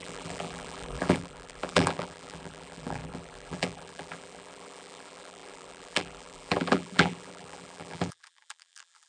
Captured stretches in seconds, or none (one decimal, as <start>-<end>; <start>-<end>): none